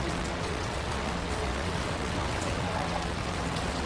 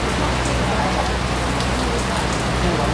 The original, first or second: second